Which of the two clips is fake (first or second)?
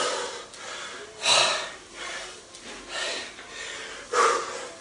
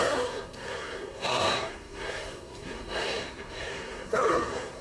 second